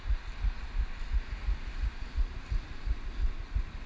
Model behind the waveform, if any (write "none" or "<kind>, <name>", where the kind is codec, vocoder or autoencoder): none